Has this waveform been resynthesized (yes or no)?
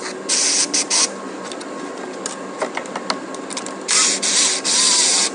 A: no